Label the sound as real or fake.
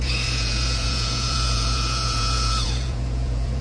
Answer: fake